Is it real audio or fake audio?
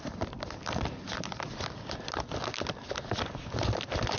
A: real